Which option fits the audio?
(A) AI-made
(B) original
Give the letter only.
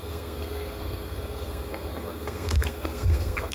A